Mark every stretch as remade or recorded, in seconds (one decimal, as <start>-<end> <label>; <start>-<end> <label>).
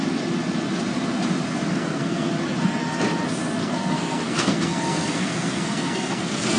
0.0-1.7 recorded; 1.7-2.3 remade; 2.3-3.6 recorded; 3.6-6.6 remade